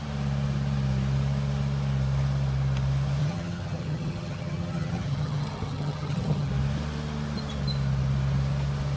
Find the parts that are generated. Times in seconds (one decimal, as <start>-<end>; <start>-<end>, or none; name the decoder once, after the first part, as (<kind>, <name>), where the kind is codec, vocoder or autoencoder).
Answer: 3.2-6.5 (vocoder, HiFi-GAN)

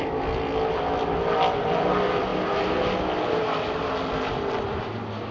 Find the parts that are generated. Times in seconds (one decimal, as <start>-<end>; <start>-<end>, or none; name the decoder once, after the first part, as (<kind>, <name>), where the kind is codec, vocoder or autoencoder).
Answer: none